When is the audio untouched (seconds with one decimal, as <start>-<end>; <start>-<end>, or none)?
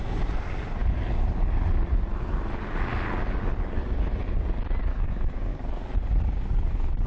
0.0-4.9; 5.6-7.1